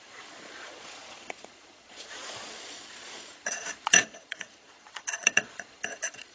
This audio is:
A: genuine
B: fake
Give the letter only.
B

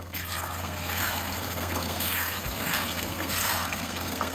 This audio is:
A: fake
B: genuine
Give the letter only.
A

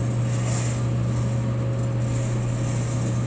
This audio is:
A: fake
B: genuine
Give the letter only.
B